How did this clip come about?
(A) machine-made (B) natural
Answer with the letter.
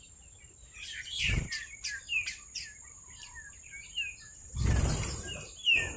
A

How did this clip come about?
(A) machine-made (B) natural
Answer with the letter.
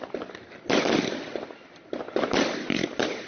B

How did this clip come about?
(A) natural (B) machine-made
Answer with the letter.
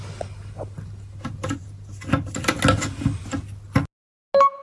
A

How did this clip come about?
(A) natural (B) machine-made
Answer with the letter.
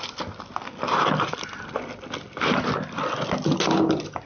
A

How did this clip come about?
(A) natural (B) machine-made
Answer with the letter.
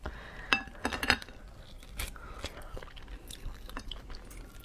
A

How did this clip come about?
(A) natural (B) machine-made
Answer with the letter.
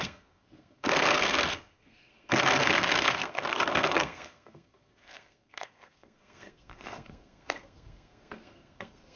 B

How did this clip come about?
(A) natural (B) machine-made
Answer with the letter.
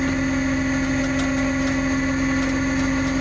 A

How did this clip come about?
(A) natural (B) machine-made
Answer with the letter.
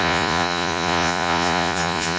B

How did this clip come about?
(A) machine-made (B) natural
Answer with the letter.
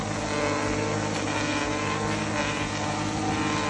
B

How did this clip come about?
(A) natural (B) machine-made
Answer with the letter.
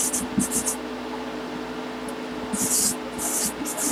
A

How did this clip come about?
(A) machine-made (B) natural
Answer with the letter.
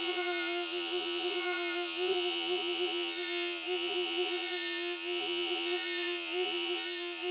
A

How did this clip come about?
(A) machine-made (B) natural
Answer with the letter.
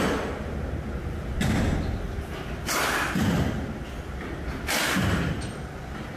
B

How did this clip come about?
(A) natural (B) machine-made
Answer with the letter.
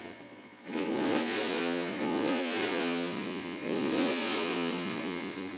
B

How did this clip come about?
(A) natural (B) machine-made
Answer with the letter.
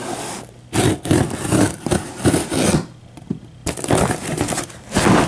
A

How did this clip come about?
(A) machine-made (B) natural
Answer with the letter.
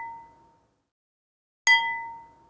B